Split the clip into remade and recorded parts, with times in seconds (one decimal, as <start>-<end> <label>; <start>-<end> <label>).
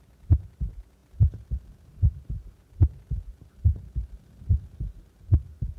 0.0-5.8 recorded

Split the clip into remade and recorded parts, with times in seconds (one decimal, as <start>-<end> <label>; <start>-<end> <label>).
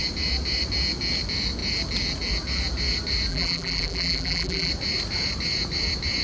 0.0-3.3 recorded; 3.3-4.7 remade; 4.7-6.2 recorded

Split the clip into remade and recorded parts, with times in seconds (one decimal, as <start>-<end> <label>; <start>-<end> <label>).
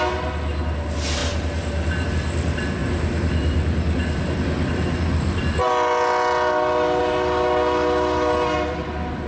0.0-9.3 recorded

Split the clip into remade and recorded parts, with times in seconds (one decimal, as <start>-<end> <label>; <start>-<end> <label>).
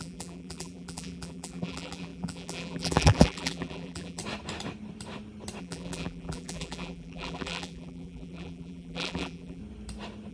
0.0-4.2 remade; 4.2-5.6 recorded; 5.6-9.6 remade; 9.6-10.3 recorded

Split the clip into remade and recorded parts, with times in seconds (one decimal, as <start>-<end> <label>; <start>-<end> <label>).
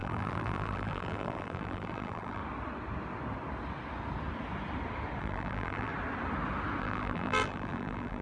0.0-2.4 remade; 2.4-5.2 recorded; 5.2-5.9 remade; 5.9-6.8 recorded; 6.8-8.2 remade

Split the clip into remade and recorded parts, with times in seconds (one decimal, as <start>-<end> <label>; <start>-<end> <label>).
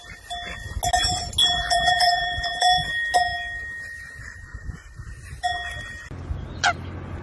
0.0-1.4 recorded; 1.4-2.9 remade; 2.9-7.2 recorded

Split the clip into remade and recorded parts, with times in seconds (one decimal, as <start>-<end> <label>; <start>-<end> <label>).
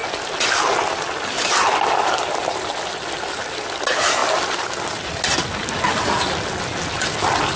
0.0-7.6 recorded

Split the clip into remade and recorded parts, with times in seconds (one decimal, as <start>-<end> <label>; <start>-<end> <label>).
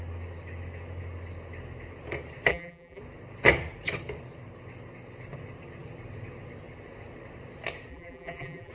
0.0-2.5 recorded; 2.5-3.0 remade; 3.0-7.9 recorded; 7.9-8.7 remade